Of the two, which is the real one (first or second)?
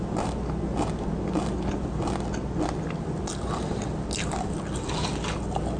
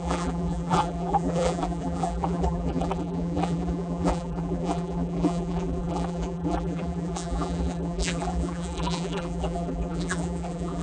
first